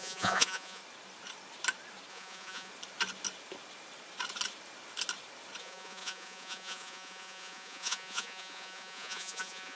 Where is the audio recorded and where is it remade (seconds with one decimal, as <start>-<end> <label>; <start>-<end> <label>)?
0.0-0.8 remade; 0.8-2.1 recorded; 2.1-2.7 remade; 2.7-5.6 recorded; 5.6-9.8 remade